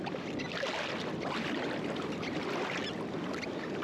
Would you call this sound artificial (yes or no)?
no